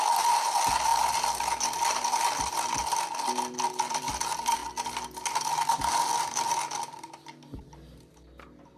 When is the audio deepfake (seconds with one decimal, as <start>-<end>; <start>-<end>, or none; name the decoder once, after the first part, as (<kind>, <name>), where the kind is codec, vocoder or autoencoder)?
0.0-0.9 (vocoder, BigVGAN v2); 3.9-4.6; 5.5-8.8